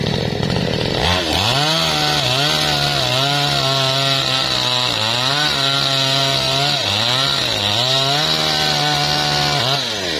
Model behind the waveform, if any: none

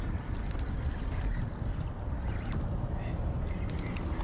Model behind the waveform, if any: none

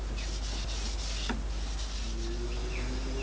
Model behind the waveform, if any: none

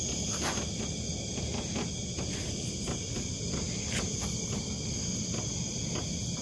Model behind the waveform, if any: none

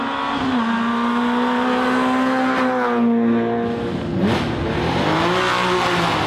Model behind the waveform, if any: none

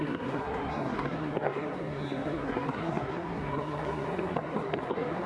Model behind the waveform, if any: codec, SNAC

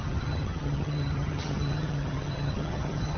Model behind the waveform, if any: vocoder, HiFi-GAN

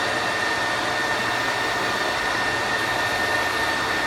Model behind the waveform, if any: none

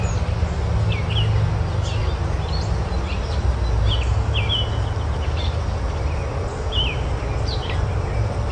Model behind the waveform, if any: none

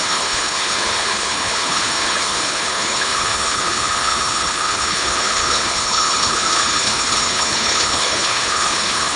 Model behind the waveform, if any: codec, HILCodec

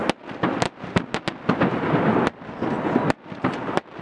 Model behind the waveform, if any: none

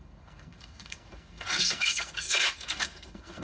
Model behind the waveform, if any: codec, SNAC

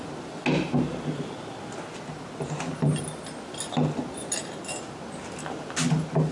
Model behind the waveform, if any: none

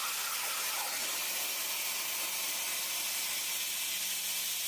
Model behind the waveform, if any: none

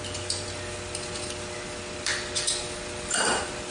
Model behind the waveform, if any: none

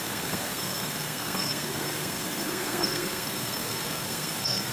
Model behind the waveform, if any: codec, SNAC